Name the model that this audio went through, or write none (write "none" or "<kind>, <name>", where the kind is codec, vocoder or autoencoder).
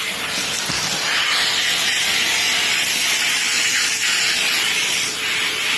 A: none